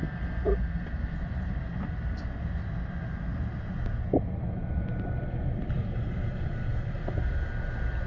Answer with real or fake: real